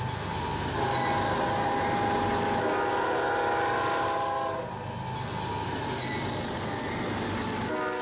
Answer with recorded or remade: recorded